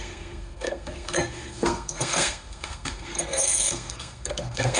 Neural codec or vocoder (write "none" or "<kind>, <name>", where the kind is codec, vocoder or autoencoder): codec, SNAC